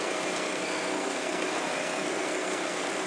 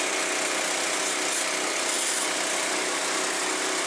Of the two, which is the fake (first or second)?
first